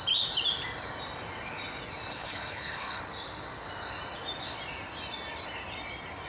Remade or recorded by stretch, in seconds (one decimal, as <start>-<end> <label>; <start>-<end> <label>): 0.0-2.1 recorded; 2.1-3.0 remade; 3.0-6.3 recorded